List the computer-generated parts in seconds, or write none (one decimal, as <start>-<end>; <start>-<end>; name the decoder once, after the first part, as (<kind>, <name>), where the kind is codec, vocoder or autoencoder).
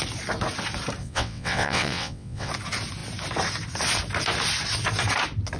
1.0-2.5 (vocoder, WaveNeXt)